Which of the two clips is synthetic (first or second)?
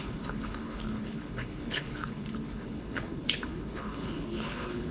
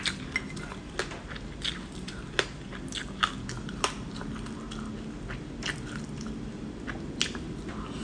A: first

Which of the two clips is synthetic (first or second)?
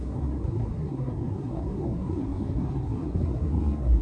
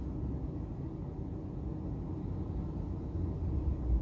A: first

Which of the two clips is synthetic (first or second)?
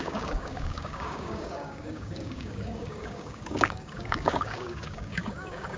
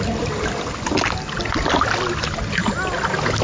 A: first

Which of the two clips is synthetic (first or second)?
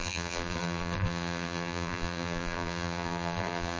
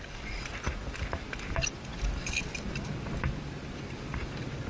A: first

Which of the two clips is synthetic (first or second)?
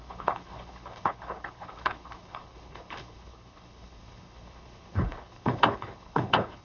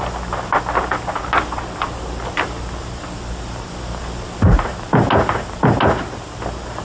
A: first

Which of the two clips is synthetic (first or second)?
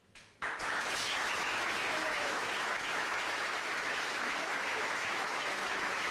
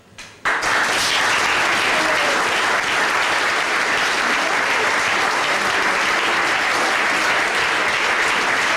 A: first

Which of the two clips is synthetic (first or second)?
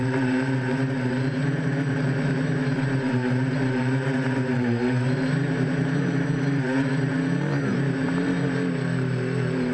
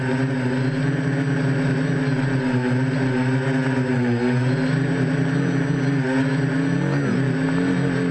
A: first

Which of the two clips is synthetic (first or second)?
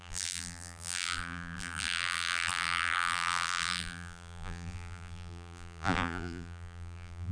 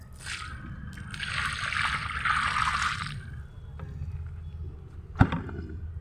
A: first